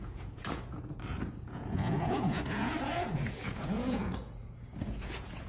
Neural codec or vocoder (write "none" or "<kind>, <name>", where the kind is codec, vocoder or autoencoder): vocoder, Vocos